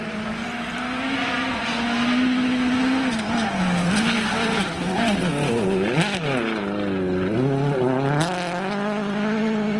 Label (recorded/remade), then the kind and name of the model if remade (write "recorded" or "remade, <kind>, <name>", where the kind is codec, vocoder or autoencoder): recorded